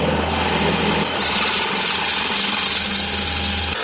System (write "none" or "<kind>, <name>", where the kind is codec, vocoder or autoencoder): none